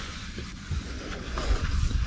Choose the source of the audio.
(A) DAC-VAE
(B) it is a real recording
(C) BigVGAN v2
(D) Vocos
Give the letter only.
D